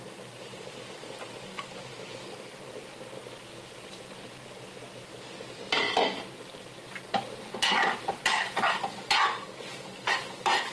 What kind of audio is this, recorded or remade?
recorded